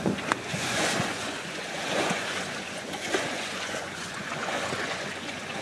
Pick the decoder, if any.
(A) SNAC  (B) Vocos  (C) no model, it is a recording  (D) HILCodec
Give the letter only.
B